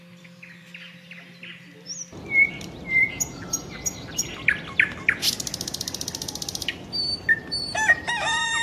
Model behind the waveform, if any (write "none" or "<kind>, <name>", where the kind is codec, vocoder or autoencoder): none